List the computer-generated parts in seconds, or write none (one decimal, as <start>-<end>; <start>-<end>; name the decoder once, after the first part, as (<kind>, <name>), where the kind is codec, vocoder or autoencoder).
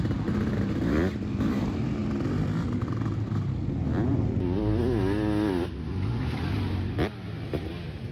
none